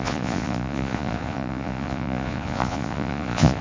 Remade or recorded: remade